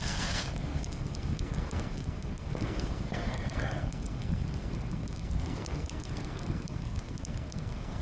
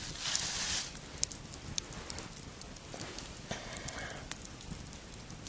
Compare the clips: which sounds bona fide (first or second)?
second